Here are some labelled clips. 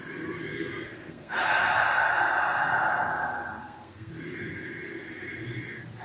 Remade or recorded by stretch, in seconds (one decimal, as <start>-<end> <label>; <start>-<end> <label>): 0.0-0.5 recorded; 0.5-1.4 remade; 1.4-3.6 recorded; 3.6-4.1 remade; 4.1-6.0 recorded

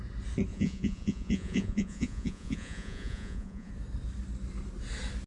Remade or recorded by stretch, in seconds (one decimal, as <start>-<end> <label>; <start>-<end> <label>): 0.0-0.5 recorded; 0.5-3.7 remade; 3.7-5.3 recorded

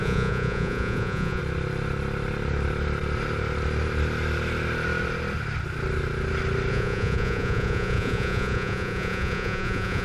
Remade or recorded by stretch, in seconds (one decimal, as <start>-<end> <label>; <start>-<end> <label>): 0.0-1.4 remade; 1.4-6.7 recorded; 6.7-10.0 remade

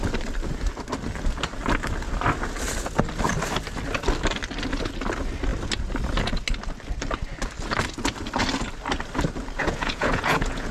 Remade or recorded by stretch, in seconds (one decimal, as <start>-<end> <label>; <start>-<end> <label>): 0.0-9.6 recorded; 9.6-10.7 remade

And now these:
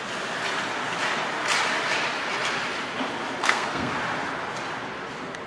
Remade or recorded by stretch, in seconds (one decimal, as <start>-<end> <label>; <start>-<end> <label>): 0.0-3.4 recorded; 3.4-3.9 remade; 3.9-5.5 recorded

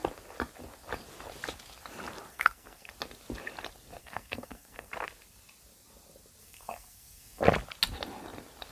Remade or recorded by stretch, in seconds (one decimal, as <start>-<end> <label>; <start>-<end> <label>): 0.0-2.3 recorded; 2.3-2.9 remade; 2.9-4.0 recorded; 4.0-4.9 remade; 4.9-6.4 recorded; 6.4-7.4 remade; 7.4-8.7 recorded